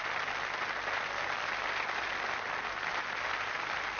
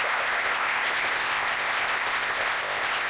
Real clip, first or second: first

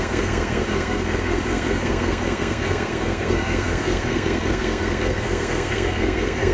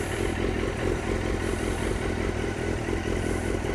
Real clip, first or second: second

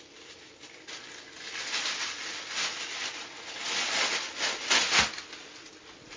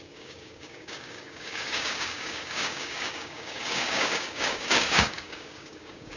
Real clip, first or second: first